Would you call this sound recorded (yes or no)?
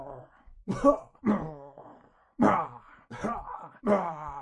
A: no